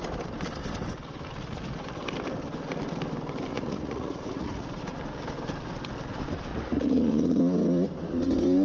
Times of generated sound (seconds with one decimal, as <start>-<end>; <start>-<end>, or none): 3.5-4.8; 6.5-7.4